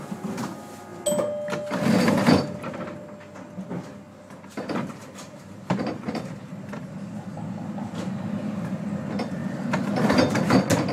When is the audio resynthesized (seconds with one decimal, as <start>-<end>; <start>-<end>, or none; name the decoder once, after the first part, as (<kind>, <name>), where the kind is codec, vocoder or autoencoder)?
4.5-6.5 (vocoder, BigVGAN v2)